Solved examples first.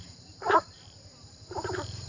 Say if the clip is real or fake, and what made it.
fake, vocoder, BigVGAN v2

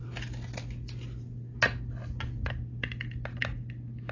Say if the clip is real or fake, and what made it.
real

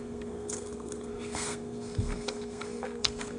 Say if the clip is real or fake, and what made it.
fake, codec, SNAC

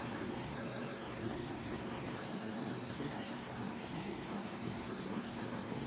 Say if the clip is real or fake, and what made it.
fake, codec, SNAC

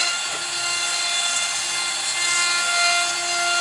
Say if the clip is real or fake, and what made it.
real